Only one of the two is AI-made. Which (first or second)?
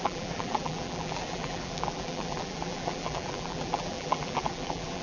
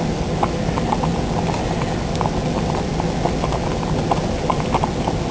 first